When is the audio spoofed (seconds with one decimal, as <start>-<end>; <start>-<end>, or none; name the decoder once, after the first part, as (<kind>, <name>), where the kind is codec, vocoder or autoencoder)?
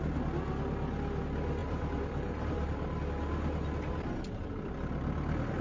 1.6-3.0 (vocoder, BigVGAN v2)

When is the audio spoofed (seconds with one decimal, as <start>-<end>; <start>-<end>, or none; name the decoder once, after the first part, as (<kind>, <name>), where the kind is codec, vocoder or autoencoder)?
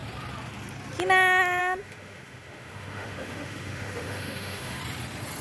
1.6-4.8 (autoencoder, DAC-VAE)